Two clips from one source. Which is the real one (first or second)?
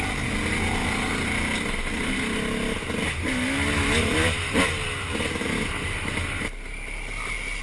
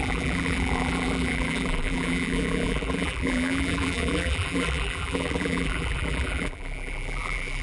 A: first